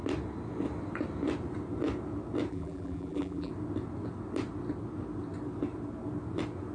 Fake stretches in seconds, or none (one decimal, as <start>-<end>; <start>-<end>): 2.5-3.5